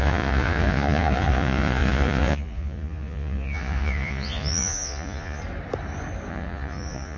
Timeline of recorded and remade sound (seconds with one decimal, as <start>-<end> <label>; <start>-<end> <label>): 0.0-5.4 remade; 5.4-6.3 recorded; 6.3-7.2 remade

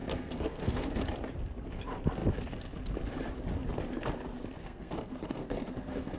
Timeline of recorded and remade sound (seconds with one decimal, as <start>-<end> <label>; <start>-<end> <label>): 0.0-1.0 remade; 1.0-4.6 recorded; 4.6-6.2 remade

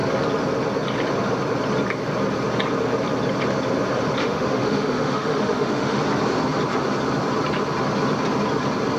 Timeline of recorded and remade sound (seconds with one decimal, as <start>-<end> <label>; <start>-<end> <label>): 0.0-4.2 recorded; 4.2-6.0 remade; 6.0-9.0 recorded

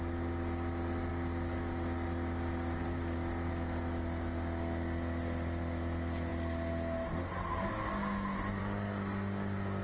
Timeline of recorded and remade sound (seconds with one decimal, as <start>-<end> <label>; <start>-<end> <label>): 0.0-9.8 recorded

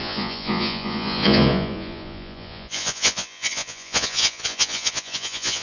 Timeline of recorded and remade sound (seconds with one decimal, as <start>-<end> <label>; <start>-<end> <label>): 0.0-5.6 remade

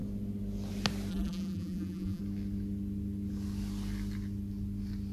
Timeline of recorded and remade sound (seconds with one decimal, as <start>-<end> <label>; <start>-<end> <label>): 0.0-1.1 recorded; 1.1-2.2 remade; 2.2-5.1 recorded